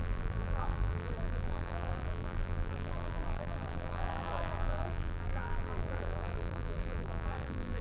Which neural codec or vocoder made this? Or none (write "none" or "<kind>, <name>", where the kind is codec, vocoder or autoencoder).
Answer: vocoder, BigVGAN v2